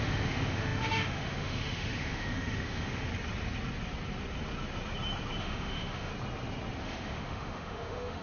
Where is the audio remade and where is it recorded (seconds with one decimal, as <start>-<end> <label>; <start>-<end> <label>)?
0.0-3.1 remade; 3.1-5.4 recorded; 5.4-6.1 remade; 6.1-6.8 recorded; 6.8-8.2 remade